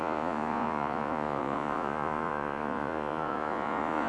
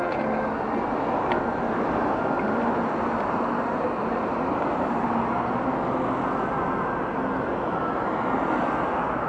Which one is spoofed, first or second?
first